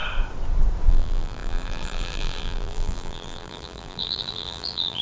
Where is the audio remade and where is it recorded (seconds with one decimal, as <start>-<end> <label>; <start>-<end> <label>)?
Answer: 0.0-0.9 recorded; 0.9-5.0 remade